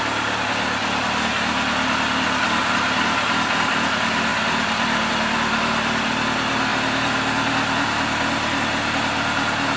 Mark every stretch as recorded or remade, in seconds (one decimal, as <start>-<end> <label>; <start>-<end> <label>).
0.0-9.8 recorded